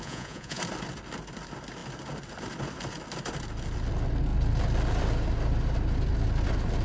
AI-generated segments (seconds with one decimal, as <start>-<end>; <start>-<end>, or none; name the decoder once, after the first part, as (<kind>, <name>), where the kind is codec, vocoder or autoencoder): 0.0-0.6 (vocoder, Vocos)